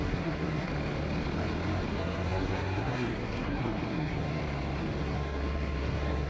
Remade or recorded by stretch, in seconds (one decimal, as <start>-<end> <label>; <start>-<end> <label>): 0.0-0.7 remade; 0.7-1.9 recorded; 1.9-4.4 remade; 4.4-5.0 recorded; 5.0-6.3 remade